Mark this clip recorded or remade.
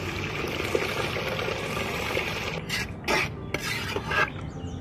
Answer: recorded